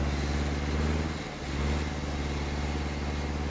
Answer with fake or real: real